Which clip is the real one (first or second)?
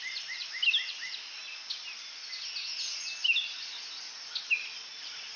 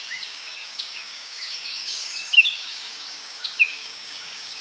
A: first